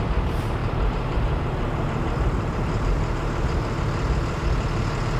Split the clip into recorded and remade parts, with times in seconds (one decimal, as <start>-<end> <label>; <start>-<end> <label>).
0.0-0.6 recorded; 0.6-3.7 remade; 3.7-5.2 recorded